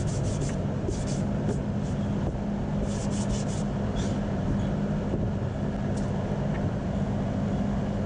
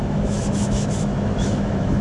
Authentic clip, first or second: first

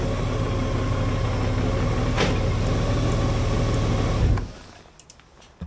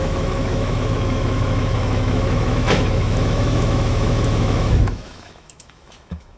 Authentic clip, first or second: first